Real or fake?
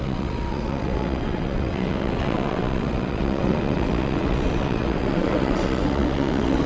fake